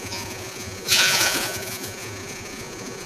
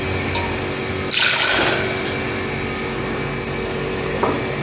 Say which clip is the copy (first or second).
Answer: first